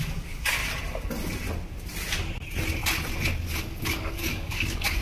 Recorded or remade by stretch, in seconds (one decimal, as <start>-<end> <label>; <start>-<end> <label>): 0.0-0.6 remade; 0.6-3.6 recorded; 3.6-5.0 remade